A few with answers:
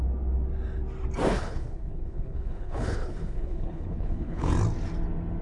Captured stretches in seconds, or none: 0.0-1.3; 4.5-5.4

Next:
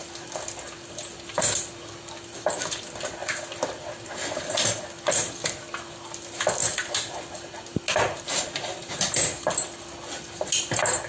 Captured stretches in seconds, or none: 0.0-6.6; 7.2-11.1

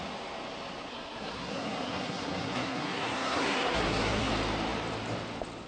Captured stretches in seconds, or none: 0.0-0.9; 4.3-5.7

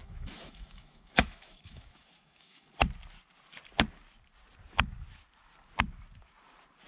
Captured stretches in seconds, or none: 2.7-6.9

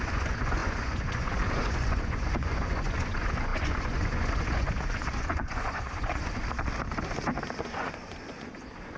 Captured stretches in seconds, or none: 6.4-7.6